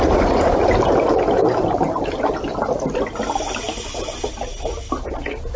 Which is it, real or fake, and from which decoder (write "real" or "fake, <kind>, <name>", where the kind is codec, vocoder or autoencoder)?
fake, vocoder, BigVGAN v2